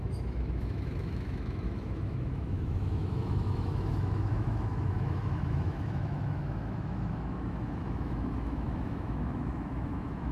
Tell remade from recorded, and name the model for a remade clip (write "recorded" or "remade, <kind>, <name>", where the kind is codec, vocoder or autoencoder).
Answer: remade, autoencoder, DAC-VAE